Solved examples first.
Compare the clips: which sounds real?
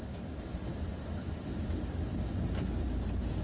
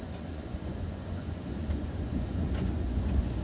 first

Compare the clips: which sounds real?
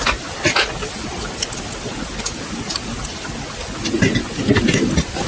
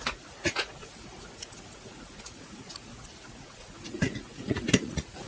first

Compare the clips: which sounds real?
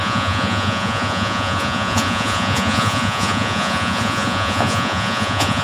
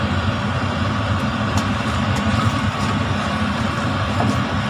second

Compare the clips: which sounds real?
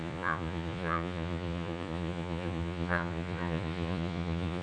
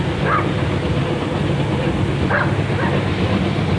second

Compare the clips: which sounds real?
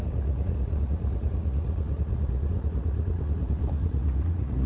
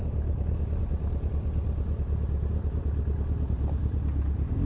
second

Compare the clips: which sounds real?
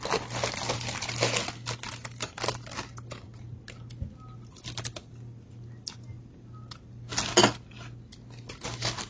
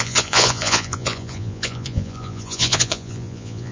first